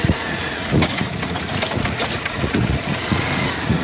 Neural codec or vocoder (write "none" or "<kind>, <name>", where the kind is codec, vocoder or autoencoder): vocoder, Vocos